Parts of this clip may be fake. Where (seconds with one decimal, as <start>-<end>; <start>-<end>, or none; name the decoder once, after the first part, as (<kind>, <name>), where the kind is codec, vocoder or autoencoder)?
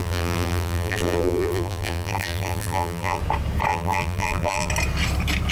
0.0-3.2 (vocoder, BigVGAN v2); 3.7-4.7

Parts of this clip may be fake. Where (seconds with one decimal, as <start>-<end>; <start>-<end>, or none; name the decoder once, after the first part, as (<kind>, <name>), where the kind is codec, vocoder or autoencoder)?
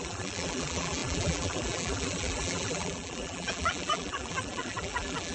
0.0-5.3 (vocoder, BigVGAN v2)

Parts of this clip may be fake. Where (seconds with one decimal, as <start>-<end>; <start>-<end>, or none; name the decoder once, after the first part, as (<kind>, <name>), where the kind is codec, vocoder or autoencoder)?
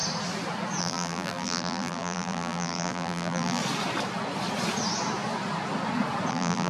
0.8-3.6 (vocoder, BigVGAN v2); 6.3-6.7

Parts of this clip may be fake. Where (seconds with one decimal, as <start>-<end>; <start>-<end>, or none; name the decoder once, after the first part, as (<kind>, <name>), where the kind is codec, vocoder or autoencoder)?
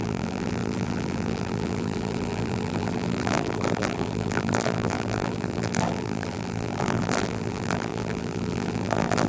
0.0-9.3 (vocoder, BigVGAN v2)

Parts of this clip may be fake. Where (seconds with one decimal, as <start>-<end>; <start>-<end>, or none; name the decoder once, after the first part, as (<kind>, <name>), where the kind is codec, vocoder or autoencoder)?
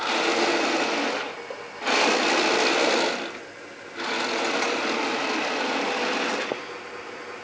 none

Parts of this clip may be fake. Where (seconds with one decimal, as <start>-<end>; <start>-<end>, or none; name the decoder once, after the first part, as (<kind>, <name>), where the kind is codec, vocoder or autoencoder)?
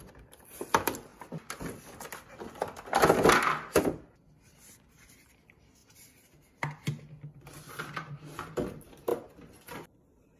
none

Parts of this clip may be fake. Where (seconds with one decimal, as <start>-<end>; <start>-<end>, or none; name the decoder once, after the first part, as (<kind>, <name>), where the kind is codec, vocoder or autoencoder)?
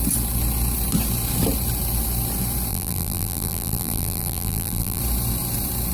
2.7-5.0 (vocoder, BigVGAN v2)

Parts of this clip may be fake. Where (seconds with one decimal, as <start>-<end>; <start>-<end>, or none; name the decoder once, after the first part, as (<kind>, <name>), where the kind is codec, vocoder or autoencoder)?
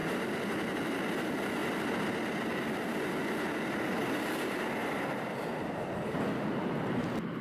none